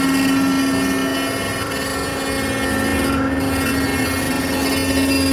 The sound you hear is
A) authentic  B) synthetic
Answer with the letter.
A